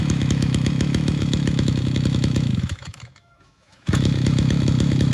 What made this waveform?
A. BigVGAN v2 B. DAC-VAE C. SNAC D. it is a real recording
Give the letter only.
B